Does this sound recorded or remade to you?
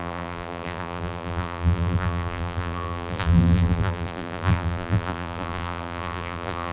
remade